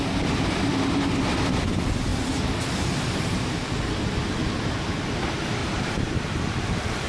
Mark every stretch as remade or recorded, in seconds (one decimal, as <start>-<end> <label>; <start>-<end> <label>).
0.0-5.6 recorded; 5.6-7.1 remade